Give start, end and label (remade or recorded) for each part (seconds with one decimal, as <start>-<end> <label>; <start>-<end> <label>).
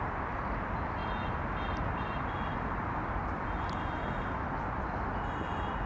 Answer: 0.0-5.9 recorded